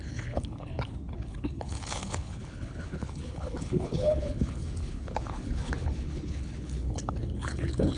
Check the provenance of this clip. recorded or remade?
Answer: remade